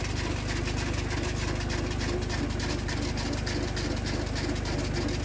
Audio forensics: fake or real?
real